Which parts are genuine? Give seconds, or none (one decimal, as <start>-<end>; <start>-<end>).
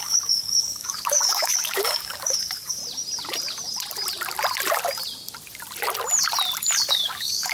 2.8-6.9